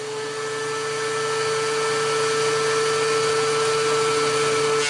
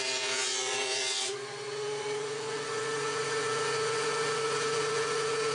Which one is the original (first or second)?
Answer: first